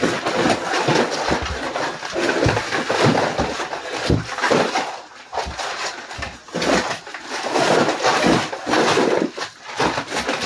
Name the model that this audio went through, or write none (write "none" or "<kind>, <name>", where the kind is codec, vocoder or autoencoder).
none